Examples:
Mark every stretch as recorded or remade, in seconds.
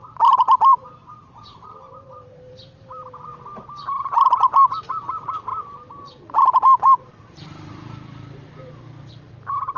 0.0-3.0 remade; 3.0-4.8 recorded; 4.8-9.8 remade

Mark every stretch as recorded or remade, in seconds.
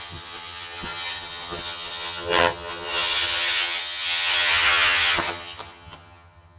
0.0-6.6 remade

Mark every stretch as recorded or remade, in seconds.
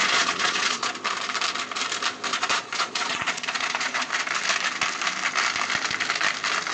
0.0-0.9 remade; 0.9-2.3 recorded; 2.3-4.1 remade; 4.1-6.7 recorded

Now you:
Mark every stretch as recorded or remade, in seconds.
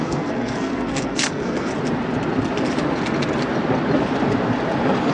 0.0-1.7 remade; 1.7-5.1 recorded